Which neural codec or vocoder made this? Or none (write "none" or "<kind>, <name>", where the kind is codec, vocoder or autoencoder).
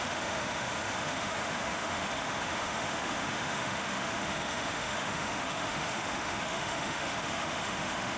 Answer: autoencoder, DAC-VAE